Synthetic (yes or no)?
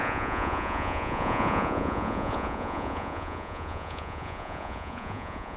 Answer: yes